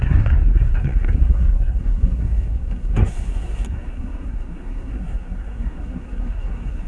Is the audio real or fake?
fake